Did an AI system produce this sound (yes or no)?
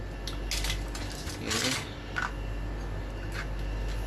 no